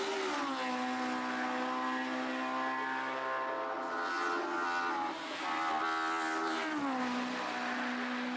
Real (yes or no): yes